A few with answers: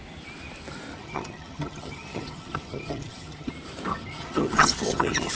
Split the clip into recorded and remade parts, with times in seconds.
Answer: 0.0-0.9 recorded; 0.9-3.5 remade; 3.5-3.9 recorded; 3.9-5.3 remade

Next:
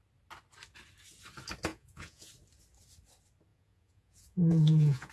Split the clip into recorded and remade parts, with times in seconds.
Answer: 0.0-1.7 recorded; 1.7-2.3 remade; 2.3-3.5 recorded; 3.5-5.1 remade

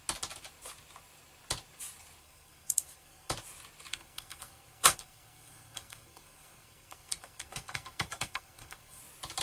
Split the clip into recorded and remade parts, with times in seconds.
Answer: 0.0-2.2 recorded; 2.2-3.3 remade; 3.3-3.9 recorded; 3.9-9.0 remade; 9.0-9.4 recorded

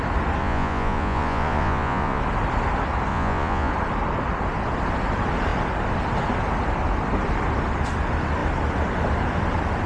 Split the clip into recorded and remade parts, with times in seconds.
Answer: 0.0-0.4 recorded; 0.4-2.2 remade; 2.2-3.1 recorded; 3.1-3.7 remade; 3.7-9.9 recorded